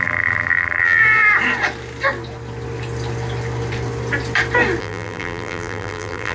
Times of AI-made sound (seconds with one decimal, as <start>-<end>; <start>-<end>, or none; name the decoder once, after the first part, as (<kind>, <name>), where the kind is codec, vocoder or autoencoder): 0.0-1.0 (vocoder, BigVGAN v2); 4.8-6.3